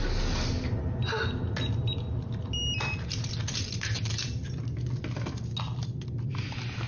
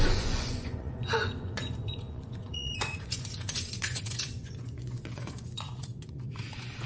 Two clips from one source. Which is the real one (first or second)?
first